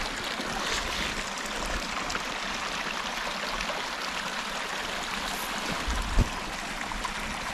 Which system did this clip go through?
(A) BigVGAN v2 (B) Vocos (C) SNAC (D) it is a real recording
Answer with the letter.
D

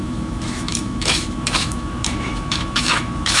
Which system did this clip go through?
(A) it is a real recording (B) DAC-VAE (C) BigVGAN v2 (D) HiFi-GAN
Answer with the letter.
B